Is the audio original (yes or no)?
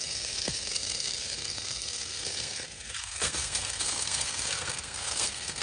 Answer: no